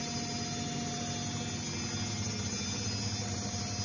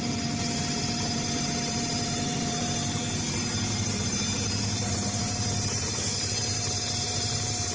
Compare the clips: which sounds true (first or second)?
first